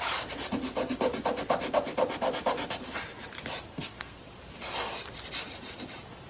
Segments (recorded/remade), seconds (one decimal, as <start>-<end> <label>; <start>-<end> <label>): 0.0-3.7 recorded; 3.7-4.2 remade; 4.2-6.3 recorded